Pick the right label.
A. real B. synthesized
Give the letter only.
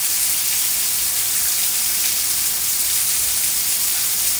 A